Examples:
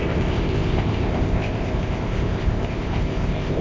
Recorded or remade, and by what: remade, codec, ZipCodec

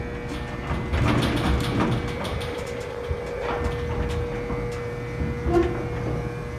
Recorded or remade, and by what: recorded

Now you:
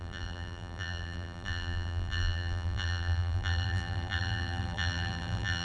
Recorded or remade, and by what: remade, vocoder, BigVGAN v2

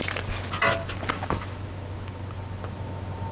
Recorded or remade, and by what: recorded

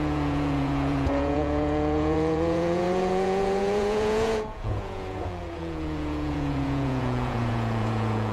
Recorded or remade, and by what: remade, vocoder, Vocos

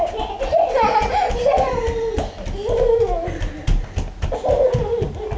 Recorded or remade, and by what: recorded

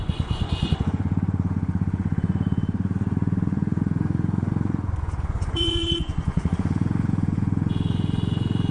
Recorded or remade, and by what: remade, vocoder, Vocos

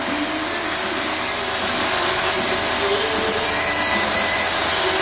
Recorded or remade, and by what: recorded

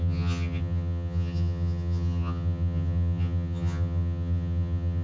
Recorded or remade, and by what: remade, vocoder, HiFi-GAN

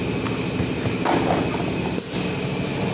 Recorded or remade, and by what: recorded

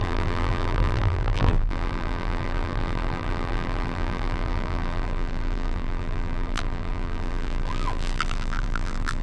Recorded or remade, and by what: remade, vocoder, BigVGAN v2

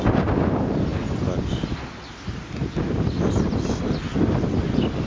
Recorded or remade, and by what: recorded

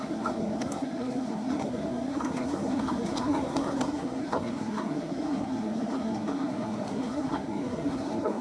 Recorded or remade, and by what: remade, codec, SNAC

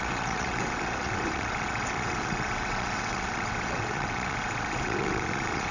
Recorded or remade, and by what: remade, vocoder, WaveNeXt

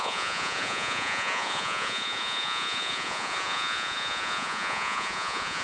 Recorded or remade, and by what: remade, vocoder, Vocos